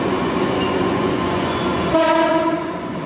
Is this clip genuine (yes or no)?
no